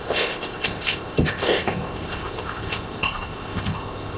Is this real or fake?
fake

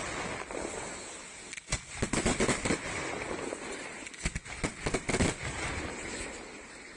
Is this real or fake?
real